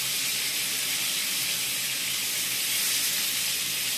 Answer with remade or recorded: recorded